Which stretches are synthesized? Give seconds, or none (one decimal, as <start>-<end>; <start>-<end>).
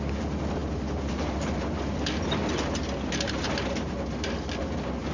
none